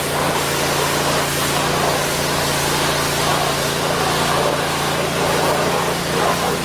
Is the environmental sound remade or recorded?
recorded